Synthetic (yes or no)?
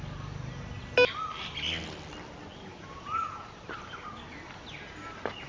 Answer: no